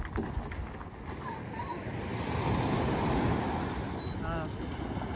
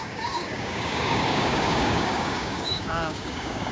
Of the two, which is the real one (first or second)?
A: first